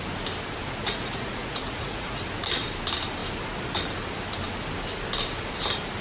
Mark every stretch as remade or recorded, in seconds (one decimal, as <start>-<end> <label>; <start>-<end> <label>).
0.0-0.8 recorded; 0.8-2.2 remade; 2.2-6.0 recorded